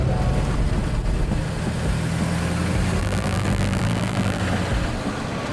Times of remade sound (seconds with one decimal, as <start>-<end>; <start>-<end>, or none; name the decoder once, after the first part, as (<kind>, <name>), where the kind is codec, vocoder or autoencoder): 3.0-4.4 (vocoder, BigVGAN v2)